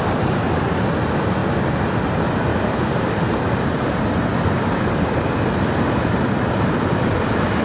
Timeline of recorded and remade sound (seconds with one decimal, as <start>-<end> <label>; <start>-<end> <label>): 0.0-2.5 recorded; 2.5-7.1 remade; 7.1-7.6 recorded